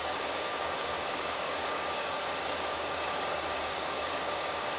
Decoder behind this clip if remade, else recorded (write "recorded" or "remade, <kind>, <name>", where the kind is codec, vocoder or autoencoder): remade, codec, DAC